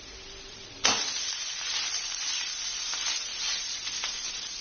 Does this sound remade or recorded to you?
remade